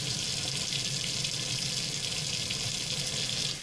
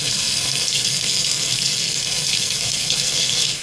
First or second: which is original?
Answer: first